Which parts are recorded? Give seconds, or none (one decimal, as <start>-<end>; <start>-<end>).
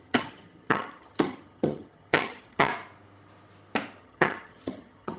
2.7-4.0